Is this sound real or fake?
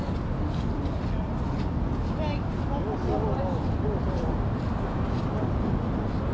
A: real